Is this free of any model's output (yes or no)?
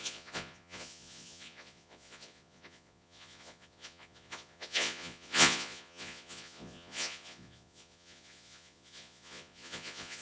no